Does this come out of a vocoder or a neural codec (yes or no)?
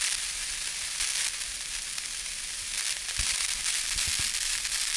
no